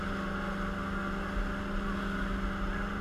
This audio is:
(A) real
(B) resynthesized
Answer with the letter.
A